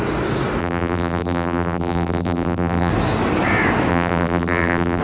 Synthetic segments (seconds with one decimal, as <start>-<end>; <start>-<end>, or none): 0.6-2.9; 3.9-5.0